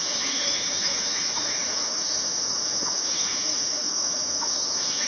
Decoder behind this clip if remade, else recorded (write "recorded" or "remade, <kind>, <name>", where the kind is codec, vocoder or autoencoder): remade, autoencoder, DAC-VAE